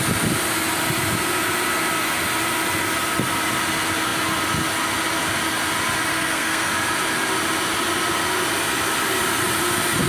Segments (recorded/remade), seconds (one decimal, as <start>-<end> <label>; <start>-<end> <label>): 0.0-6.1 recorded; 6.1-6.7 remade; 6.7-10.1 recorded